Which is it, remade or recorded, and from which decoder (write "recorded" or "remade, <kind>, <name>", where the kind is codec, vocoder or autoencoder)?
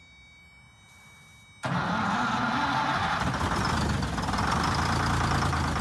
recorded